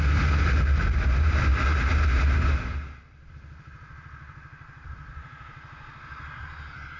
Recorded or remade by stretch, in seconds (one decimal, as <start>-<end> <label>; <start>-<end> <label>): 0.0-7.0 recorded